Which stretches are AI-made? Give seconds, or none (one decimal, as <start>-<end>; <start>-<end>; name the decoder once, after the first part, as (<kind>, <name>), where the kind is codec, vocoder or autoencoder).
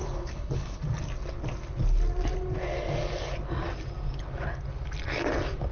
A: 0.0-0.8 (codec, HILCodec)